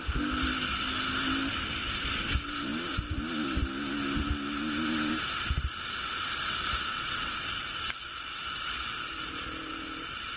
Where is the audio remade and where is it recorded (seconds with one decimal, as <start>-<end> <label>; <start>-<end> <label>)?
0.0-10.4 recorded